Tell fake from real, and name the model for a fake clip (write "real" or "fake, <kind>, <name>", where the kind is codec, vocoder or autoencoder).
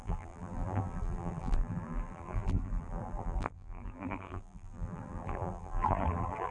fake, vocoder, BigVGAN v2